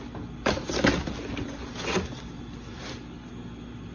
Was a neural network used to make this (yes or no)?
no